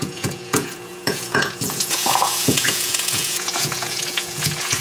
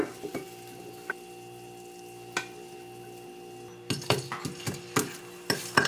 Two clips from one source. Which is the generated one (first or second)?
first